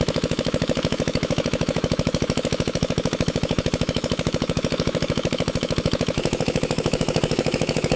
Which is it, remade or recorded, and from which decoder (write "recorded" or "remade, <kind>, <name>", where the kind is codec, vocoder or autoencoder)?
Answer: remade, autoencoder, DAC-VAE